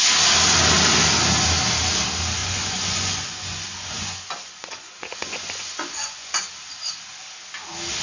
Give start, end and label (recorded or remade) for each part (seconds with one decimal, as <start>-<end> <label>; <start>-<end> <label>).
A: 0.0-2.4 recorded; 2.4-6.4 remade; 6.4-8.0 recorded